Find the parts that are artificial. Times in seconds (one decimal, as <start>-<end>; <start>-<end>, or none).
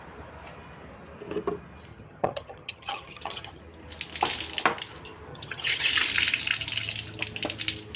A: 1.9-3.6; 5.3-5.9